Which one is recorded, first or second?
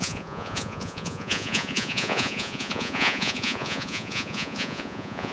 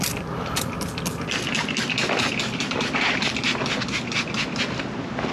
second